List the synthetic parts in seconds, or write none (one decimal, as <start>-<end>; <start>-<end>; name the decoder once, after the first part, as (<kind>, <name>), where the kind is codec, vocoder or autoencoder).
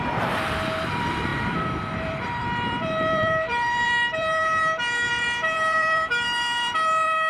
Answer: 0.0-7.3 (vocoder, BigVGAN v2)